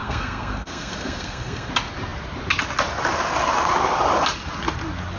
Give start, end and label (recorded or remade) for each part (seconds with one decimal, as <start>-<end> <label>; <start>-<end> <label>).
0.0-1.7 remade; 1.7-5.2 recorded